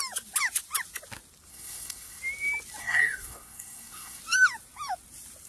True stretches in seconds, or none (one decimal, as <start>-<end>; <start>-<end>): 0.0-1.5; 2.2-2.8; 4.2-5.5